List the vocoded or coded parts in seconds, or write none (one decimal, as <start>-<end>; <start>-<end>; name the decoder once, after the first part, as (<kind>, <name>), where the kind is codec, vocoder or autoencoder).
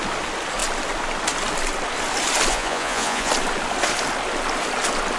2.5-3.3 (vocoder, Vocos)